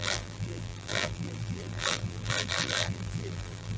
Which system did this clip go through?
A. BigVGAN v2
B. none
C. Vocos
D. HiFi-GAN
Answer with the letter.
A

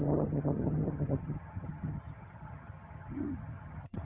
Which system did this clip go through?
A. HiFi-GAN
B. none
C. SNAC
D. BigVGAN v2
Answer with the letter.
A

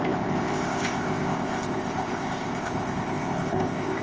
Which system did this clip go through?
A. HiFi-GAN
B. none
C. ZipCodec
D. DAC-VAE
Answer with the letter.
C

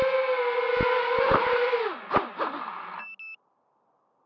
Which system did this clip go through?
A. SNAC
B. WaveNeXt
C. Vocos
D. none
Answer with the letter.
D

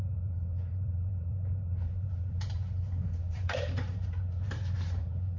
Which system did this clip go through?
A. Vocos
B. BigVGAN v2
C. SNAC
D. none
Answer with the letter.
B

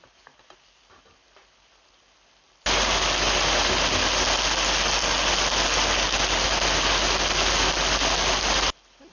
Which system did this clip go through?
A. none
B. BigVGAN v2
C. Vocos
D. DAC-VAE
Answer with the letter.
A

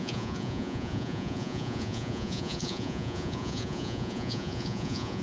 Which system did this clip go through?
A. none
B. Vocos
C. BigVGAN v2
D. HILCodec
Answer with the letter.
B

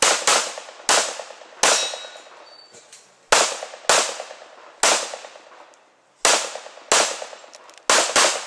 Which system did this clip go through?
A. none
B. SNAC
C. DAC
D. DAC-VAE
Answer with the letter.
A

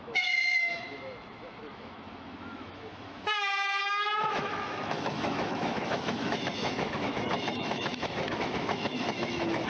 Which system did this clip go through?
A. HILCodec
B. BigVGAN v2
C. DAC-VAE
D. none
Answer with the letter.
C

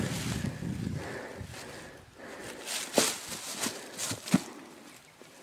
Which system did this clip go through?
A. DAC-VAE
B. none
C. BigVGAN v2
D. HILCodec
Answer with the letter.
B